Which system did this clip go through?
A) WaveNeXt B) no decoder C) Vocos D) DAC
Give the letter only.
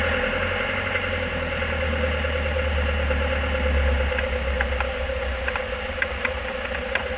B